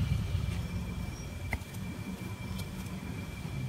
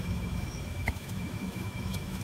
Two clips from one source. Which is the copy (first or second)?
second